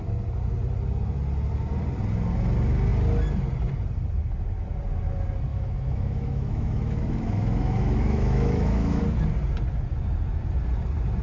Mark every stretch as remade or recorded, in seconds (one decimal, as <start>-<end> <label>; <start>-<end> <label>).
0.0-5.5 recorded; 5.5-9.0 remade; 9.0-11.2 recorded